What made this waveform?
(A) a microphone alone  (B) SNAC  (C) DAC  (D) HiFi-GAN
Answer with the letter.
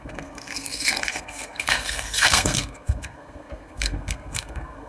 B